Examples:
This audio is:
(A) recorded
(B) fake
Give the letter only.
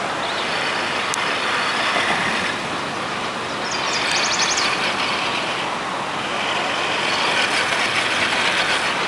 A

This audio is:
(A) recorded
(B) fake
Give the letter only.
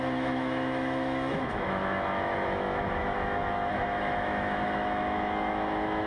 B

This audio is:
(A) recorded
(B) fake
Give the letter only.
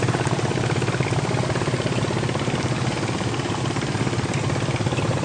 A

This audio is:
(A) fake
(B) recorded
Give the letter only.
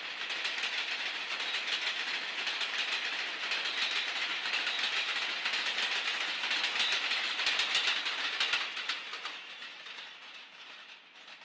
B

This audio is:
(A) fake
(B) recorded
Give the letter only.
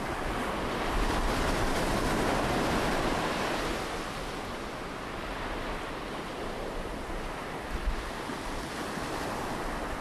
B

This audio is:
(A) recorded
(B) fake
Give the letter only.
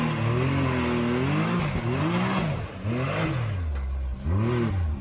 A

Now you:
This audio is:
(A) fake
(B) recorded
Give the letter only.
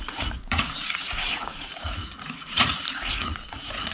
A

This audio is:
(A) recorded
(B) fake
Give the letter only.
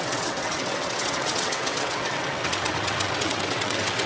B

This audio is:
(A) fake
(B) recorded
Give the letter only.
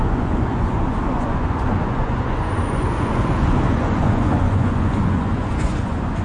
A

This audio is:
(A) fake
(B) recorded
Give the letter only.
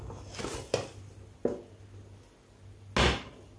B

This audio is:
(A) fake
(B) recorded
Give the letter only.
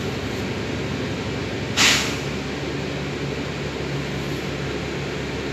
B